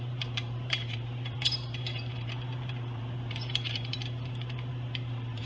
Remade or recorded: remade